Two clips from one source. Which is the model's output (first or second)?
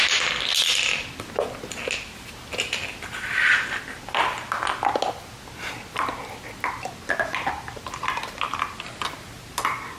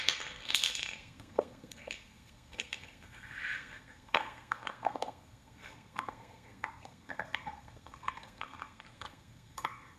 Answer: second